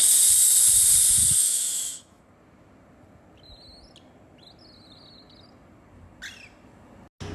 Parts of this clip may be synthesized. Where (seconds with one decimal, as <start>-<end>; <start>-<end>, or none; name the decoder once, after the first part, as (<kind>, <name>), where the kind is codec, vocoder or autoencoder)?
1.4-2.2 (autoencoder, DAC-VAE)